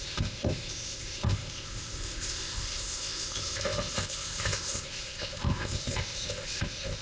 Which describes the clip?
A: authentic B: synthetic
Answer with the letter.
B